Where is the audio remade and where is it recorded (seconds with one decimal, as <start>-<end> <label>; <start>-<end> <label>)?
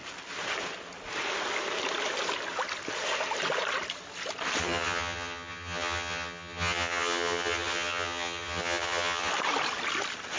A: 0.0-4.6 recorded; 4.6-9.3 remade; 9.3-10.4 recorded